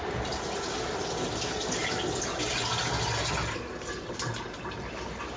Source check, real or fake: real